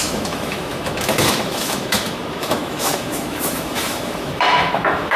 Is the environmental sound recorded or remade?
remade